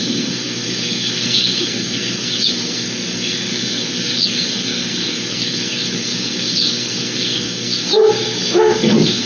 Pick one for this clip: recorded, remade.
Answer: remade